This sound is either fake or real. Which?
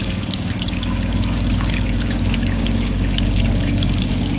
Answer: fake